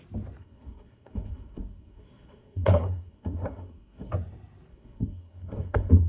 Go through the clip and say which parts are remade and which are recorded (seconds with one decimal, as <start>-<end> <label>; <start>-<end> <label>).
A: 0.0-0.4 recorded; 0.4-4.1 remade; 4.1-4.7 recorded; 4.7-6.1 remade